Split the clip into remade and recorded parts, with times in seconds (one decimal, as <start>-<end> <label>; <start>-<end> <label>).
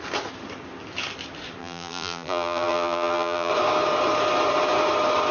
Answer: 0.0-1.6 recorded; 1.6-3.5 remade; 3.5-5.3 recorded